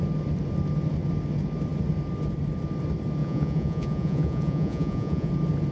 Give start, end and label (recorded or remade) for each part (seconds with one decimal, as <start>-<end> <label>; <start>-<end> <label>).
0.0-3.2 recorded; 3.2-5.3 remade; 5.3-5.7 recorded